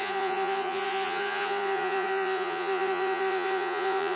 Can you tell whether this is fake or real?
fake